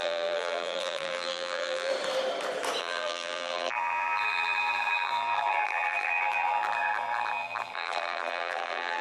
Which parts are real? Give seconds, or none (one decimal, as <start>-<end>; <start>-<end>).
1.9-2.8